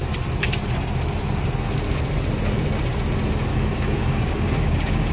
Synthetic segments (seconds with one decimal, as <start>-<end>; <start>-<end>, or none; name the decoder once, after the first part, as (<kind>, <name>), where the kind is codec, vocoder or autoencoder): 3.5-5.1 (codec, DAC)